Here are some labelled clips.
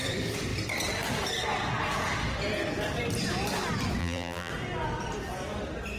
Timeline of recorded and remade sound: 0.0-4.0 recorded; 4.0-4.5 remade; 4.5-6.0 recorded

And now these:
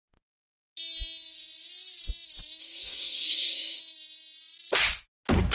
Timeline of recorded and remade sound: 0.0-2.6 recorded; 2.6-3.8 remade; 3.8-5.5 recorded

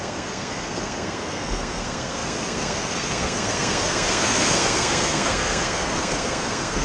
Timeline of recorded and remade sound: 0.0-6.8 remade

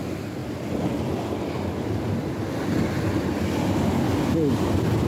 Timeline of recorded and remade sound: 0.0-5.1 recorded

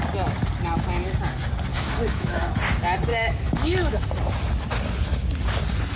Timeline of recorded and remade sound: 0.0-1.7 recorded; 1.7-2.5 remade; 2.5-3.1 recorded; 3.1-4.0 remade; 4.0-6.0 recorded